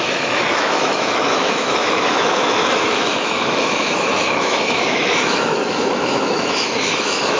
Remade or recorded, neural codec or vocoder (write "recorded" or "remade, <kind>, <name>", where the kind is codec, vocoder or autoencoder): remade, autoencoder, DAC-VAE